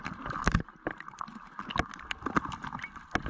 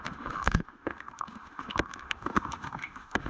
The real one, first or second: first